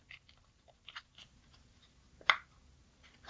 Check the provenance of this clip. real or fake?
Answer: real